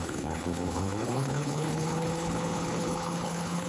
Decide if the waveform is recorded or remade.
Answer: remade